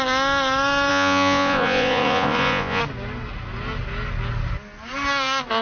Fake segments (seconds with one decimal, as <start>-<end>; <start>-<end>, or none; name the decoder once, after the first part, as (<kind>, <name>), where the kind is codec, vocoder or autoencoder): 0.9-2.8 (vocoder, Vocos)